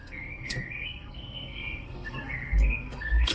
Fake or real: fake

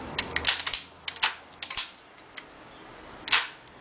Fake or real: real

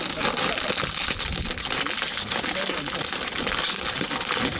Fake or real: real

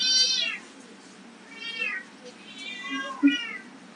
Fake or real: real